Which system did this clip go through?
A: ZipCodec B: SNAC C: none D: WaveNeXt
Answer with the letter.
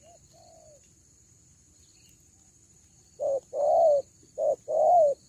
C